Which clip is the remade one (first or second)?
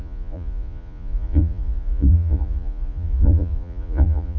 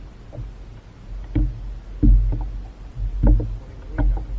first